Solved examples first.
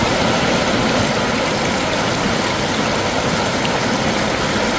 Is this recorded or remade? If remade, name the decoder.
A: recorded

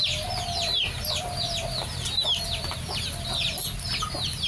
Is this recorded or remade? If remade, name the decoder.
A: recorded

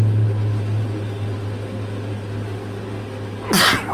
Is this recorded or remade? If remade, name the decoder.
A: recorded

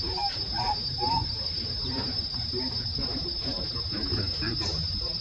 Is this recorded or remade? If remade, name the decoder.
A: remade, vocoder, BigVGAN v2